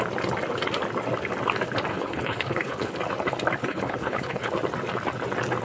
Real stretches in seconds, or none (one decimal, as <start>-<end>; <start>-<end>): 0.0-1.9; 2.9-3.6; 4.5-5.6